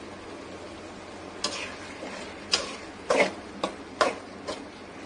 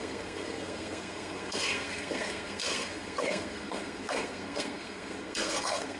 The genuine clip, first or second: first